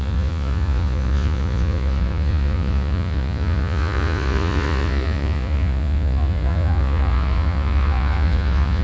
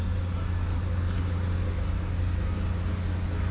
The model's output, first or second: first